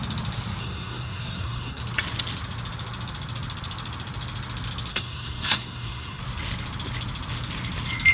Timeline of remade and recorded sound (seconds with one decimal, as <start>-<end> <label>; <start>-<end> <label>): 0.0-0.6 recorded; 0.6-1.8 remade; 1.8-4.9 recorded; 4.9-6.2 remade; 6.2-8.1 recorded